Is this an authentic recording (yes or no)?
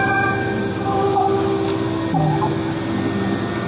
yes